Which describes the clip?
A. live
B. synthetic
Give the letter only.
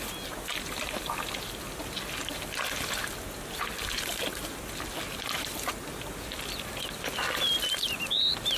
A